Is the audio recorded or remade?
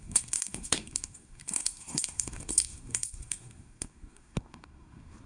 remade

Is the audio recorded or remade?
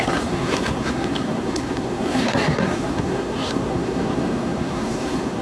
remade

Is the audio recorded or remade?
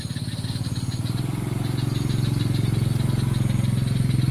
recorded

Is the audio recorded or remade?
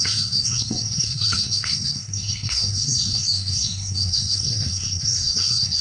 remade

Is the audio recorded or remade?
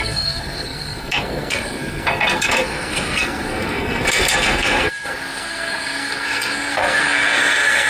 remade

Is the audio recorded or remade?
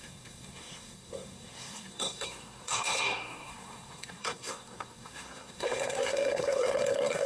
remade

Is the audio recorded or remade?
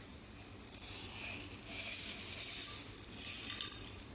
recorded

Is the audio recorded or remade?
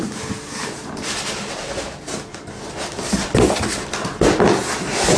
recorded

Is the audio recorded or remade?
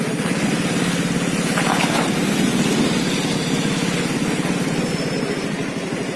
recorded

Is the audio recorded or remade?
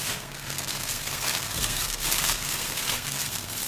remade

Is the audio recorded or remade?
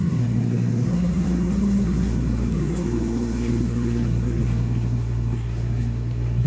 remade